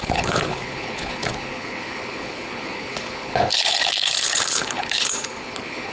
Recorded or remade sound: remade